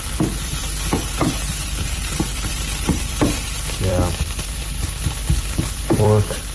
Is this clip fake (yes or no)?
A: yes